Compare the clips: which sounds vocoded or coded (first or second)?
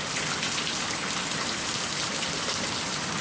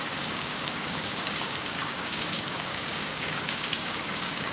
second